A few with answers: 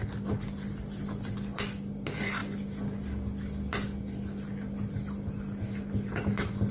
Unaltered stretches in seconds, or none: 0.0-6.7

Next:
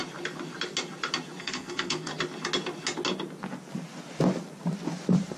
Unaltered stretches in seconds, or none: 0.0-1.4; 2.1-5.4

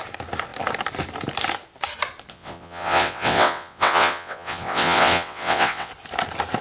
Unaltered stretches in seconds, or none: 0.0-2.3; 5.9-6.6

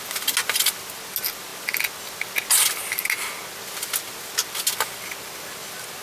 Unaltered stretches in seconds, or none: 0.0-6.0

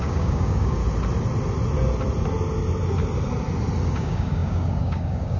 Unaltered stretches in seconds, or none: 0.8-4.0

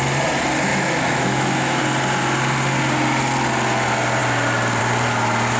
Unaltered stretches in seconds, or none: 0.0-0.7; 1.8-5.6

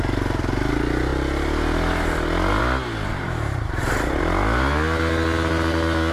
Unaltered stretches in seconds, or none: 0.0-3.1; 4.2-6.1